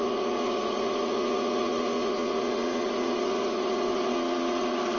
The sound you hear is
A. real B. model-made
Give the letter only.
B